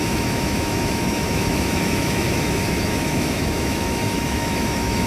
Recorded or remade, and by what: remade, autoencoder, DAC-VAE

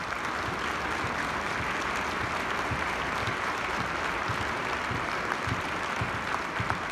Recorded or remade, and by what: recorded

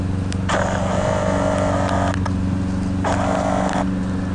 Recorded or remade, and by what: recorded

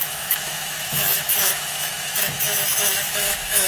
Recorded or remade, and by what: remade, autoencoder, DAC-VAE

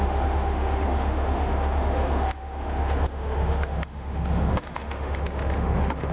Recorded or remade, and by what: remade, autoencoder, DAC-VAE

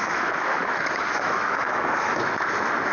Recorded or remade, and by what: remade, autoencoder, DAC-VAE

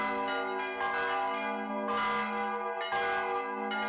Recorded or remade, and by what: recorded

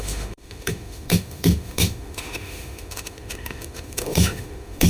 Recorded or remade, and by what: remade, autoencoder, DAC-VAE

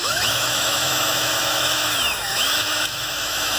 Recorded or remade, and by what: remade, autoencoder, DAC-VAE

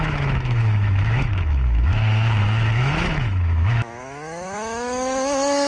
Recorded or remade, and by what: remade, autoencoder, DAC-VAE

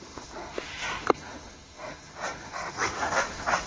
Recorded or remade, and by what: remade, autoencoder, DAC-VAE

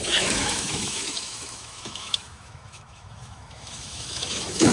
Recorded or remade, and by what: remade, autoencoder, DAC-VAE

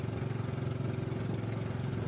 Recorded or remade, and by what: recorded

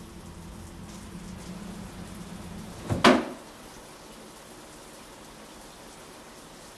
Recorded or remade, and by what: recorded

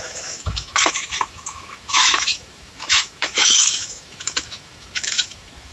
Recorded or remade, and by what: remade, autoencoder, DAC-VAE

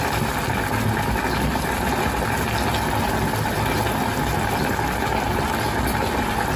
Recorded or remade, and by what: recorded